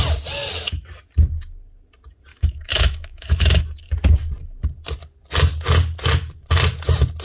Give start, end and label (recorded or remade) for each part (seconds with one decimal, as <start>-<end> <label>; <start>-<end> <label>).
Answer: 0.0-2.3 recorded; 2.3-3.6 remade; 3.6-7.2 recorded